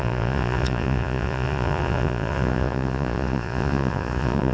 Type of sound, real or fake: fake